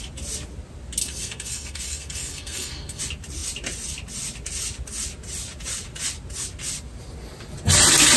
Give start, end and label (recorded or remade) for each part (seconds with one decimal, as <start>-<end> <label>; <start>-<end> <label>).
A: 0.0-1.0 recorded; 1.0-3.0 remade; 3.0-8.2 recorded